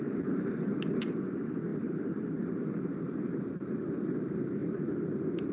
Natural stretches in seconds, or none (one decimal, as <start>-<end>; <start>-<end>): 0.0-1.7; 4.0-5.5